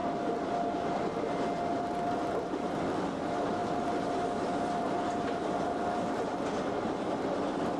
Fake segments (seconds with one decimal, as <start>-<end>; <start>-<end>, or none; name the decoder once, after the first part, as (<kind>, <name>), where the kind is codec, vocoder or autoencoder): 1.2-3.6 (vocoder, BigVGAN v2); 4.6-7.8